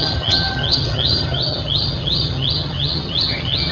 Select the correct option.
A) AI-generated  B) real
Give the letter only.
A